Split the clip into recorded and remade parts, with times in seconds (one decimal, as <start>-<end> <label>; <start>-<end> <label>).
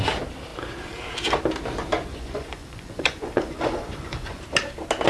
0.0-2.1 recorded; 2.1-4.4 remade; 4.4-5.1 recorded